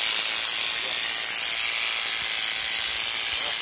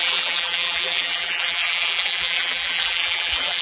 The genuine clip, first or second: first